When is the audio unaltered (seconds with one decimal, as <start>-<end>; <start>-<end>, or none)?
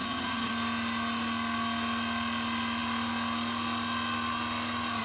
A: 0.5-5.0